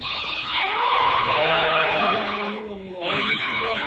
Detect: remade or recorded remade